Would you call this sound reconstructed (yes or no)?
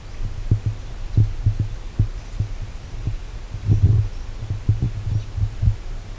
no